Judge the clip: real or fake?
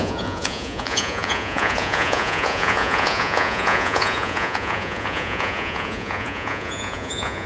fake